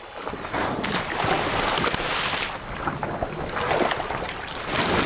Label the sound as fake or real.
real